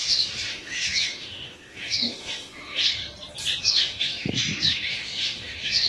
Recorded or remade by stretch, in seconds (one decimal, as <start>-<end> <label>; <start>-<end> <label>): 0.0-3.0 remade; 3.0-3.6 recorded; 3.6-5.9 remade